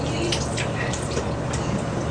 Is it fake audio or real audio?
fake